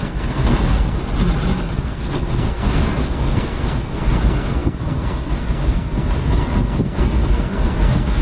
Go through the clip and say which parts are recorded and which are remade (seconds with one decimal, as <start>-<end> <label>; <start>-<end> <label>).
0.0-1.0 remade; 1.0-1.6 recorded; 1.6-8.2 remade